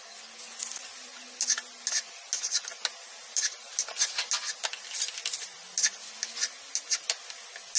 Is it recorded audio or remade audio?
recorded